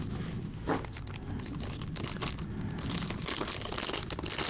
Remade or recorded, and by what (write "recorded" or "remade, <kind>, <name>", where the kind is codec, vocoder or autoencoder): recorded